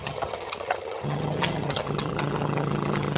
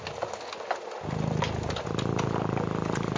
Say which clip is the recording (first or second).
second